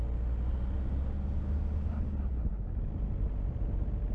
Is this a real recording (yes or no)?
yes